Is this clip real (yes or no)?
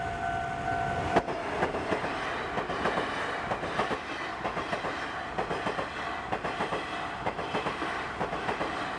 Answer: yes